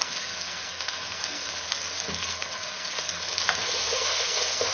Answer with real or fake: fake